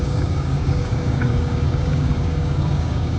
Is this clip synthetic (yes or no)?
yes